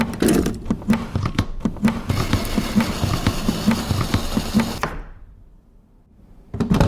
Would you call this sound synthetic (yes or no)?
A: no